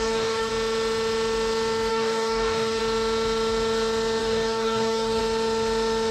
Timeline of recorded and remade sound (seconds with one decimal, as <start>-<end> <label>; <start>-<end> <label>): 0.0-0.5 remade; 0.5-1.9 recorded; 1.9-2.8 remade; 2.8-4.2 recorded; 4.2-5.2 remade; 5.2-6.1 recorded